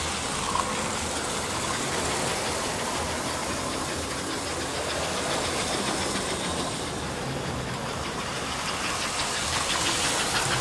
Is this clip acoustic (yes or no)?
yes